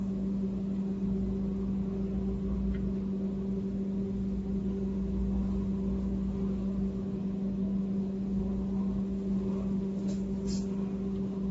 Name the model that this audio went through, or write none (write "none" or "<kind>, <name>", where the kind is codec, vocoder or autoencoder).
none